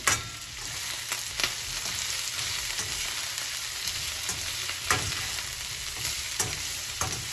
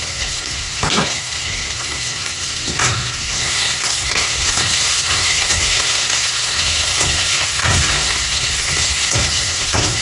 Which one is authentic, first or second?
first